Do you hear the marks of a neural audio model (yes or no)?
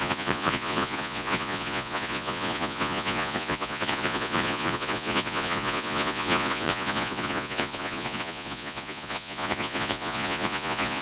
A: yes